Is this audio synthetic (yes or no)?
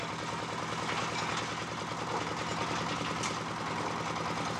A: no